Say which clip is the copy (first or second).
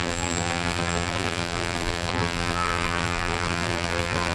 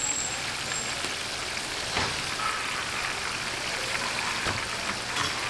first